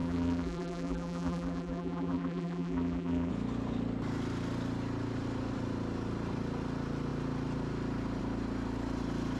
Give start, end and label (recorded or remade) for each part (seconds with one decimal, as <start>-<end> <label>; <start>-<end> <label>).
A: 0.0-3.3 remade; 3.3-9.4 recorded

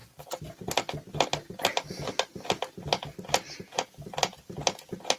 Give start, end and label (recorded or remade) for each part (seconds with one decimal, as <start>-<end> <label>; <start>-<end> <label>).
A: 0.0-5.2 recorded

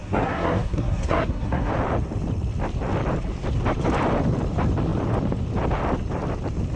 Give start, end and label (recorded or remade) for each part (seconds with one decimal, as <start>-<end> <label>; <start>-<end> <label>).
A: 0.0-1.7 remade; 1.7-6.8 recorded